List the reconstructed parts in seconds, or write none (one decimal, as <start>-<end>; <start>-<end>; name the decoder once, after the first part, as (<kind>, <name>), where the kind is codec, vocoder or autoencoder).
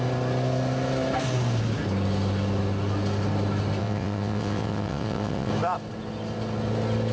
3.8-5.5 (vocoder, WaveNeXt)